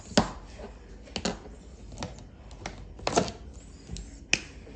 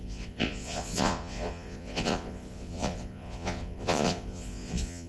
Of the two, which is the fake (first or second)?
second